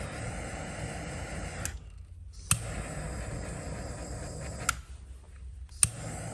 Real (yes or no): yes